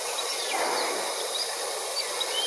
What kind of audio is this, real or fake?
real